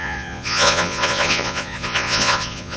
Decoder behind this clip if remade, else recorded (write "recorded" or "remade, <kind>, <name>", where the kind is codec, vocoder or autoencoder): remade, vocoder, Vocos